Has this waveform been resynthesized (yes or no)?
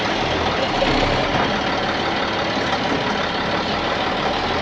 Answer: no